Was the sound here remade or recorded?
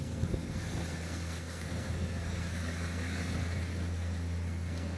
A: remade